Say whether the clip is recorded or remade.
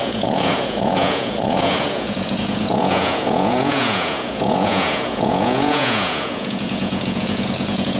remade